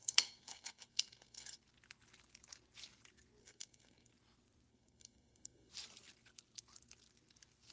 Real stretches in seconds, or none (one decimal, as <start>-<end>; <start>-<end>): 1.6-3.4; 4.1-4.7; 5.7-7.7